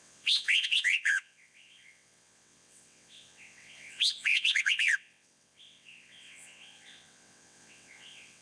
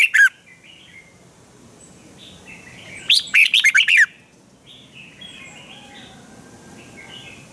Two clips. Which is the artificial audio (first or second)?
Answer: first